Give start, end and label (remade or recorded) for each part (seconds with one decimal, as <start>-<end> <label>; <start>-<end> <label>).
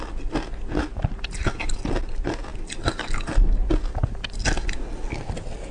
0.0-5.7 recorded